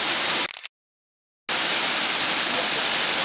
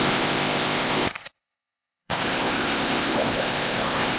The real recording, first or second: first